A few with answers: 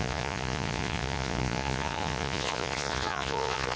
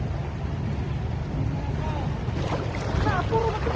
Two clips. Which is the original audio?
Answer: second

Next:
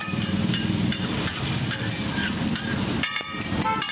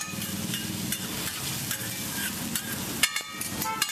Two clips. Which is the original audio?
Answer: second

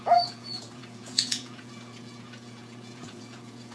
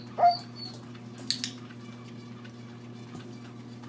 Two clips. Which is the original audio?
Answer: second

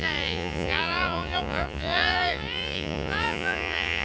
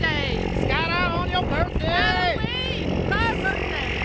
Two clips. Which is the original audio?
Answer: second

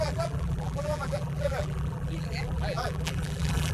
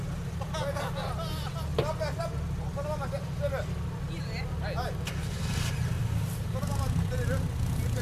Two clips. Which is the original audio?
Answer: second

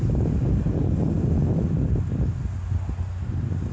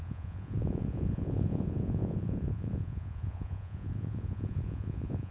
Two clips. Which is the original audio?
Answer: first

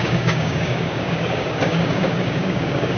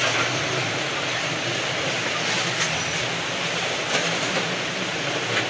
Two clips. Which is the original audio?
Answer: second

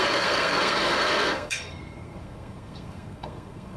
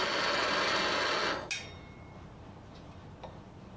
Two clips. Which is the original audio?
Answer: second